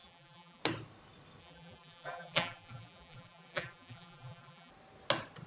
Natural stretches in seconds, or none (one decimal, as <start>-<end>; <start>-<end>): 0.6-1.4; 4.7-5.5